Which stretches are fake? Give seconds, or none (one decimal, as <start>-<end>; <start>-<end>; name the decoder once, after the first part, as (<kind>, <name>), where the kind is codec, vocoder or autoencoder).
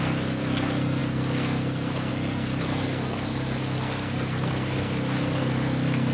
0.0-6.1 (codec, SNAC)